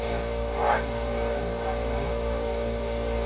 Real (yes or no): no